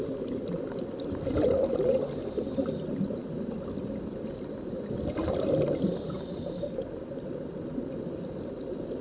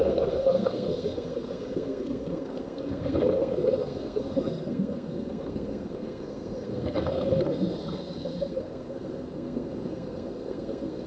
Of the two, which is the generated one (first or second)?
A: second